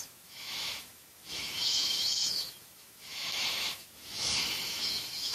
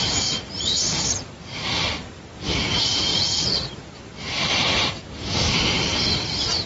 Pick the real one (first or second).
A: second